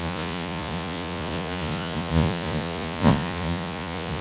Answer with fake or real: fake